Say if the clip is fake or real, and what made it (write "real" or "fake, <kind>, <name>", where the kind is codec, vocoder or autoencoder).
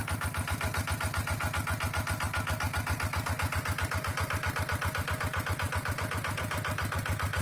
real